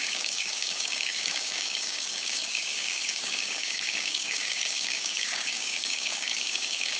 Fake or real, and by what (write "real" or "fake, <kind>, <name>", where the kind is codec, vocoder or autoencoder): fake, codec, DAC